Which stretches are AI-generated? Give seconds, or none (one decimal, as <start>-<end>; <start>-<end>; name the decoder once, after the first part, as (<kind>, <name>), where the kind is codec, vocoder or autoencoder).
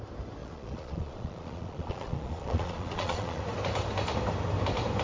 0.4-3.4 (vocoder, Vocos)